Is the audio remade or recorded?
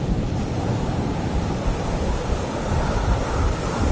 recorded